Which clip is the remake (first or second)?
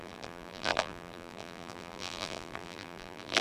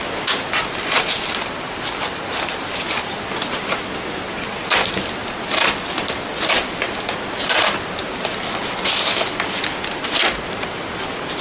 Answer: first